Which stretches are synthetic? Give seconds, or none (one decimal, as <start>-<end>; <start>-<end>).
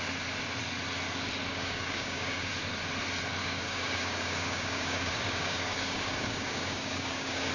1.5-2.5; 3.4-7.5